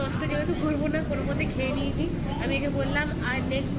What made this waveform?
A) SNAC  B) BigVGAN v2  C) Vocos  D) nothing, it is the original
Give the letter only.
D